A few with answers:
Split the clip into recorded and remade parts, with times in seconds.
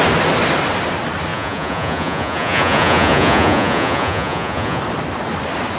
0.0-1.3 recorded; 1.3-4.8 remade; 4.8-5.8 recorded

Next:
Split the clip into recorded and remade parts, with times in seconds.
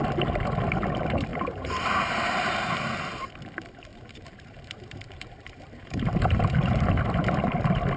0.0-1.3 recorded; 1.3-2.7 remade; 2.7-3.9 recorded; 3.9-6.9 remade; 6.9-8.0 recorded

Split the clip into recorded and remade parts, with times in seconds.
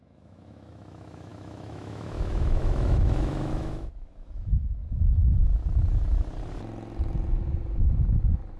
0.0-4.8 remade; 4.8-8.6 recorded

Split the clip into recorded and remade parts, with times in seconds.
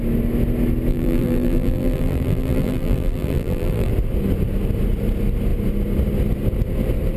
0.0-0.9 recorded; 0.9-3.9 remade; 3.9-7.2 recorded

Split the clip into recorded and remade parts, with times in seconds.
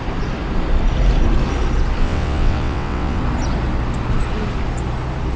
0.0-2.0 recorded; 2.0-3.2 remade; 3.2-5.4 recorded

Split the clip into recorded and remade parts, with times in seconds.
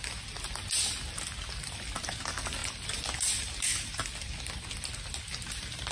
0.0-5.9 recorded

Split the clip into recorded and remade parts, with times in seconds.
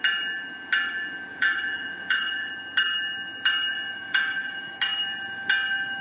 0.0-1.3 recorded; 1.3-2.5 remade; 2.5-3.7 recorded; 3.7-4.8 remade; 4.8-6.0 recorded